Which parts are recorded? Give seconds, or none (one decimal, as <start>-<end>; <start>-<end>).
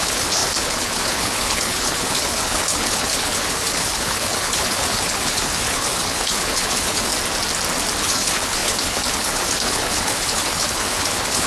7.1-8.0